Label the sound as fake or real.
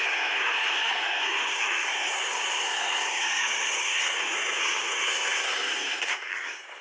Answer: fake